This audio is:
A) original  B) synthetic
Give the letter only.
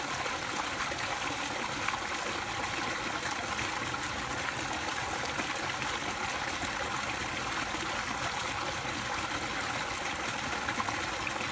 A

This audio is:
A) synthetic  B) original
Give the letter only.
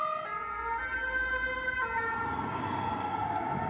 B